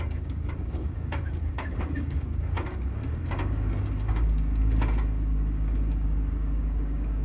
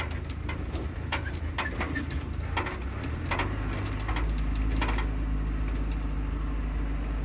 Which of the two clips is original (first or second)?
second